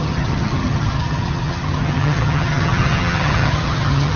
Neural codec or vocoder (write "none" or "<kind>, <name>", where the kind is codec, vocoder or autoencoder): vocoder, HiFi-GAN